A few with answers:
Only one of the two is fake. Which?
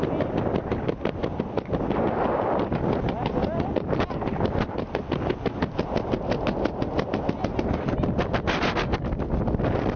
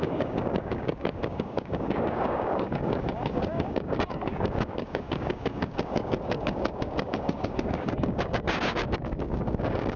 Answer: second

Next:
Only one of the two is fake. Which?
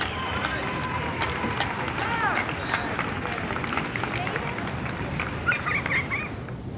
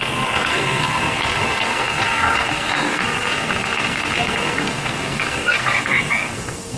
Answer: second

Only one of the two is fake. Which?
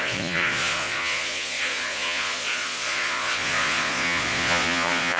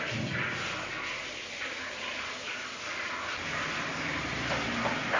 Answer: first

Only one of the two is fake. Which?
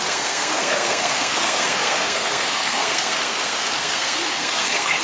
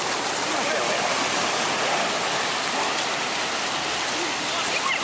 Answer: first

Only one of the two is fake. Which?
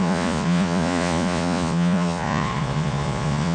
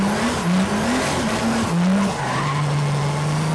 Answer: first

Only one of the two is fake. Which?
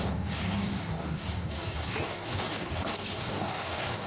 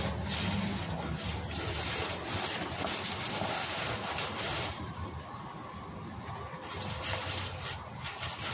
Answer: first